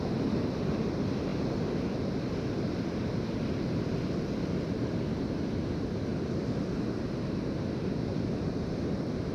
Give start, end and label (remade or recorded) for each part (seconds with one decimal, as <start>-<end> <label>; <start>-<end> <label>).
0.0-9.3 recorded